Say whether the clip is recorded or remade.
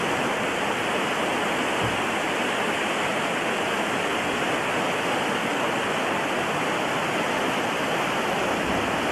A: recorded